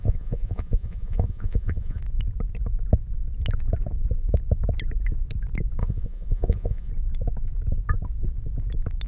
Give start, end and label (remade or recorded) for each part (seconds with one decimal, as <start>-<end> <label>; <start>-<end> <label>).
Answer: 0.0-2.0 remade; 2.0-5.8 recorded; 5.8-6.9 remade; 6.9-9.1 recorded